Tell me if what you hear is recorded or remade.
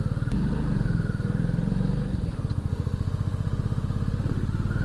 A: recorded